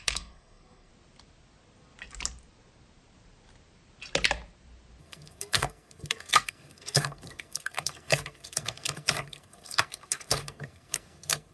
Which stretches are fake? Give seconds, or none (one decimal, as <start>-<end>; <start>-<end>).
0.0-0.9; 5.0-11.5